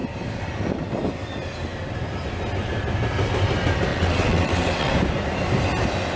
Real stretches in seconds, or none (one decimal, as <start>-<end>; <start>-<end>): 0.0-3.9; 4.9-6.2